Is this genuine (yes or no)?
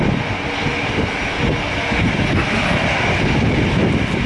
yes